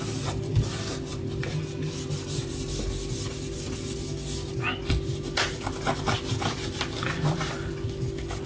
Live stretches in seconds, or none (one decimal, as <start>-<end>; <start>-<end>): 0.0-8.5